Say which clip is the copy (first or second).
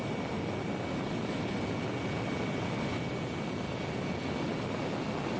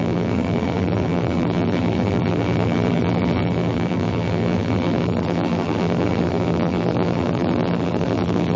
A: second